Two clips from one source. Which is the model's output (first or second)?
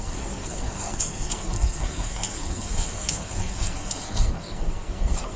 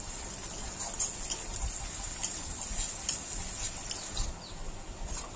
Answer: first